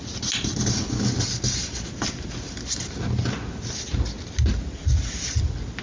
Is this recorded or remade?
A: recorded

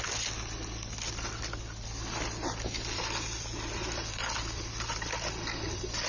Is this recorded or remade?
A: recorded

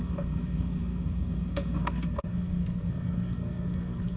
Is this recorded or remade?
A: remade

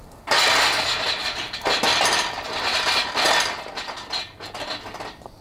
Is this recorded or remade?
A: recorded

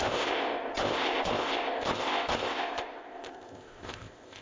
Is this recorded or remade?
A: remade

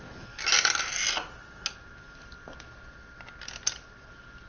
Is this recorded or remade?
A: recorded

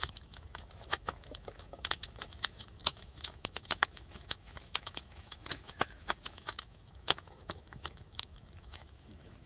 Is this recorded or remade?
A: remade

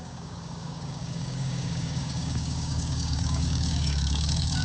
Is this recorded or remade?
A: remade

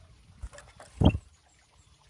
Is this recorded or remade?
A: recorded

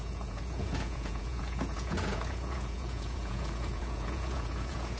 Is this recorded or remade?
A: remade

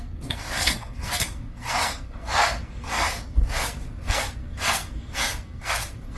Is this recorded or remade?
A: remade